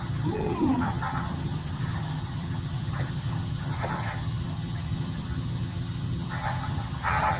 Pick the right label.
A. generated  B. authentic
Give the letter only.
A